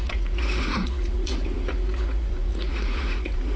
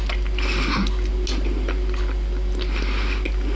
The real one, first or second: second